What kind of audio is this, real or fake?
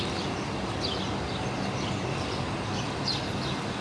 real